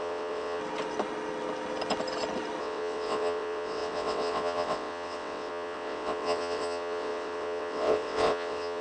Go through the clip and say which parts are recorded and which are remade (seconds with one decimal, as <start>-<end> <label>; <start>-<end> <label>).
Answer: 0.0-0.6 remade; 0.6-2.6 recorded; 2.6-8.8 remade